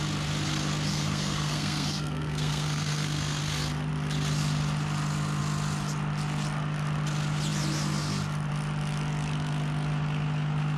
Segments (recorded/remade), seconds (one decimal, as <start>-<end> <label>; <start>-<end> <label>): 0.0-0.9 recorded; 0.9-3.4 remade; 3.4-10.8 recorded